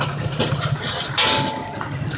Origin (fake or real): real